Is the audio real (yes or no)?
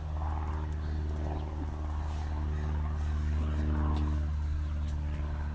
yes